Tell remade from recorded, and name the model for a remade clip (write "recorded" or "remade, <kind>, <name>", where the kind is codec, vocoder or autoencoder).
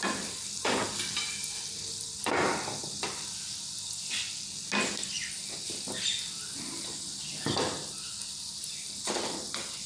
recorded